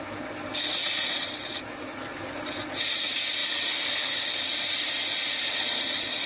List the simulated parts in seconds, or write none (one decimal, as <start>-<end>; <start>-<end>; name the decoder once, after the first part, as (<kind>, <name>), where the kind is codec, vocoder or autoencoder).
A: none

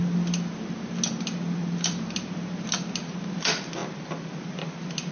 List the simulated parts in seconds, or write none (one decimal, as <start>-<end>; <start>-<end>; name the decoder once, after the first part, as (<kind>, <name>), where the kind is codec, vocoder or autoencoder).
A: none

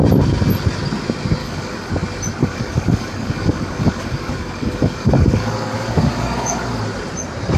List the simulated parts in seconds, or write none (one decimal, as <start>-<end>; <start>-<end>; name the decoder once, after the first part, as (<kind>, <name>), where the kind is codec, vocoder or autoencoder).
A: 1.4-1.9 (codec, DAC); 2.4-6.8

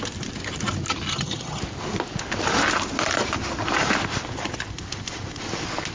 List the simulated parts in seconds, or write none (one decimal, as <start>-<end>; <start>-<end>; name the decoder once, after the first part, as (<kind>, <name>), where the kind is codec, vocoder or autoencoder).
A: 1.1-1.6 (vocoder, HiFi-GAN)

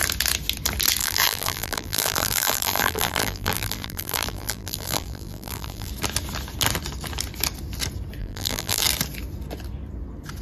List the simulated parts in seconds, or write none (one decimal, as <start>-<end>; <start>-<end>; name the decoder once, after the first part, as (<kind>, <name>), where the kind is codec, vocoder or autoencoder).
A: 1.0-5.9 (vocoder, BigVGAN v2); 8.2-8.8

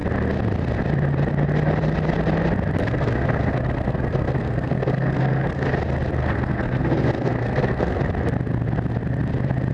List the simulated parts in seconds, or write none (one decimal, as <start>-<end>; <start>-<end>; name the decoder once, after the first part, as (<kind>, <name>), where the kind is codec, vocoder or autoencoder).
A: 2.8-5.7 (codec, SNAC); 6.2-8.0